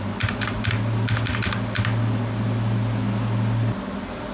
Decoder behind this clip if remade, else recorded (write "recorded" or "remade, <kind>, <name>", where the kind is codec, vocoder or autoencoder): recorded